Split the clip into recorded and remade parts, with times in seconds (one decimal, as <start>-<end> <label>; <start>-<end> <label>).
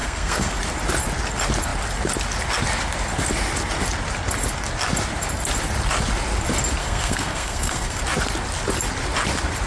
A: 0.0-0.6 remade; 0.6-6.8 recorded; 6.8-8.0 remade; 8.0-9.7 recorded